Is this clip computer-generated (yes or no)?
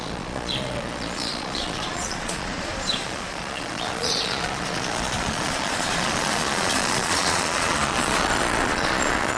yes